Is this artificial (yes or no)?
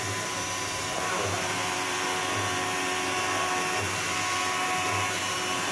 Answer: yes